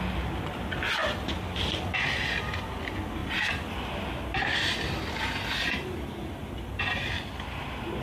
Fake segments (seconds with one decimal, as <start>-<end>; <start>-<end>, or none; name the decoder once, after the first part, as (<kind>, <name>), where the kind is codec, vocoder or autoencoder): 3.2-6.8 (vocoder, BigVGAN v2)